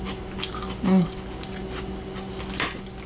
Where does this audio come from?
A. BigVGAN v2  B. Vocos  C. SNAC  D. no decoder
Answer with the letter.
D